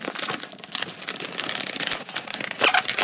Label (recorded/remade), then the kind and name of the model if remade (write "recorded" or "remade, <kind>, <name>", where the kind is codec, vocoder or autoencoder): recorded